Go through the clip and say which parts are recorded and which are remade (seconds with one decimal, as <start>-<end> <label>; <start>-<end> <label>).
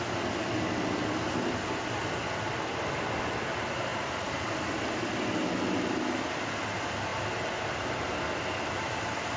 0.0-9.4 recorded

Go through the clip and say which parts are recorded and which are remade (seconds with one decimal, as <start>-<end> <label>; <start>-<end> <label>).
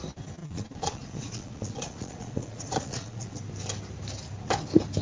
0.0-0.4 recorded; 0.4-3.4 remade; 3.4-5.0 recorded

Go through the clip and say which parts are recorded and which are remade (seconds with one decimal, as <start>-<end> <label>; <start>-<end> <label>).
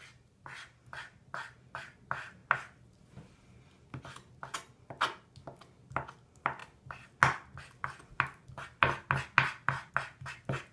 0.0-10.7 recorded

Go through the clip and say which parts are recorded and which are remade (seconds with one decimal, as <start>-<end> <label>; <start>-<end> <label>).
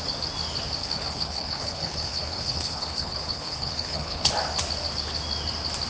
0.0-0.8 recorded; 0.8-4.3 remade; 4.3-5.9 recorded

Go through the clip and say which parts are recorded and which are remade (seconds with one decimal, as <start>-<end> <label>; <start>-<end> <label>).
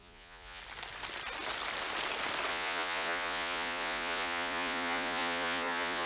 0.0-0.6 remade; 0.6-2.5 recorded; 2.5-6.1 remade